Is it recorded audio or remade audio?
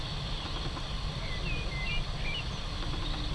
recorded